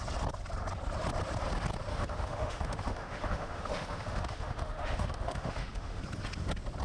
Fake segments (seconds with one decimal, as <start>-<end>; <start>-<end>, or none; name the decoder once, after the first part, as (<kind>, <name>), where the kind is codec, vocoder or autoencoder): 1.9-6.0 (autoencoder, DAC-VAE)